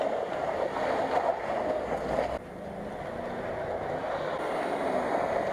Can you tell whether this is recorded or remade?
recorded